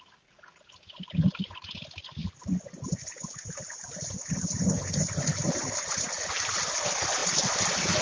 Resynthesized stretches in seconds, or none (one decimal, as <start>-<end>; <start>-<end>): none

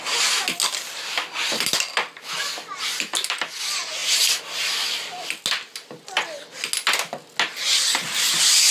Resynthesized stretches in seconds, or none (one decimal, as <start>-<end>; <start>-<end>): none

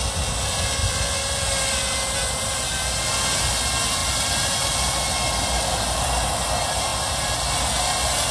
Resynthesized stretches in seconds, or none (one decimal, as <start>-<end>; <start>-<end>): 0.8-1.8; 4.0-6.0

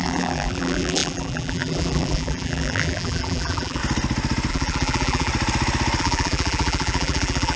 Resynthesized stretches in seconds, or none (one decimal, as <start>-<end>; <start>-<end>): 0.0-3.8; 4.5-5.3; 6.0-7.6

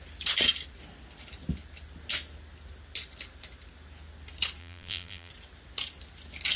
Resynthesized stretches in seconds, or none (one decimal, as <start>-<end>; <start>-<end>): 4.6-5.3